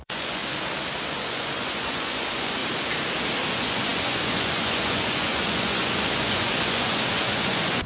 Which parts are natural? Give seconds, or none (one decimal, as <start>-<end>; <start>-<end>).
0.4-1.1; 2.6-3.5